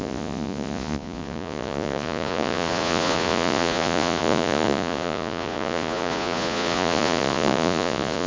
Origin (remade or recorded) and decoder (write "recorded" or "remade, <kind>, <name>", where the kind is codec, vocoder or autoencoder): remade, vocoder, Vocos